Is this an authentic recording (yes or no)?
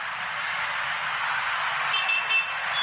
yes